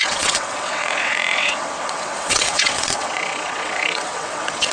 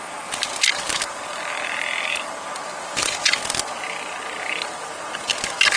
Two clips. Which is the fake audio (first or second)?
first